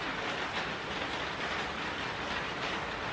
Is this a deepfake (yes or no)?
no